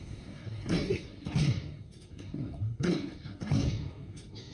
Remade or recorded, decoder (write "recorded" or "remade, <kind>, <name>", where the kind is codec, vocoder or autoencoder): remade, codec, SNAC